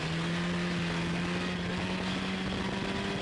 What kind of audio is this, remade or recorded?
recorded